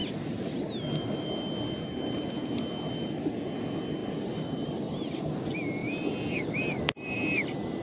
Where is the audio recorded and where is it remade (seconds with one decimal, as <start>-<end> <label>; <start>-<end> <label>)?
0.0-4.0 recorded; 4.0-5.2 remade; 5.2-5.8 recorded; 5.8-7.8 remade